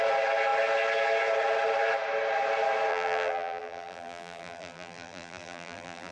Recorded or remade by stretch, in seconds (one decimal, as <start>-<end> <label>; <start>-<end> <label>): 0.0-2.9 recorded; 2.9-6.1 remade